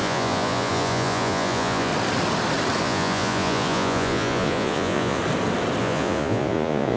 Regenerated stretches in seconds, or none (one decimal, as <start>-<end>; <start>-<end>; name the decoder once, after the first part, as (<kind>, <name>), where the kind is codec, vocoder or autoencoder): 0.0-1.9 (vocoder, Vocos); 2.8-5.2; 5.8-7.0